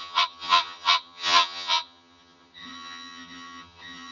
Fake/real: fake